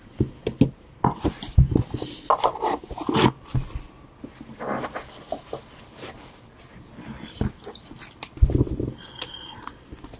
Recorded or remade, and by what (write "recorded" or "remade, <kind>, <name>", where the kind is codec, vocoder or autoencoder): recorded